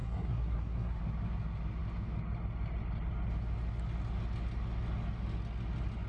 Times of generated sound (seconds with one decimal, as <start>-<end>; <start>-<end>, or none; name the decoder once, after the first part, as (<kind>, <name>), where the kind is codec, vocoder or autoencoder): 0.0-1.0 (codec, SNAC)